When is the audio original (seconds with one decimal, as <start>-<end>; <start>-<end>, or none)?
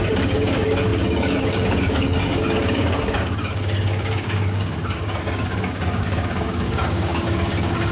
none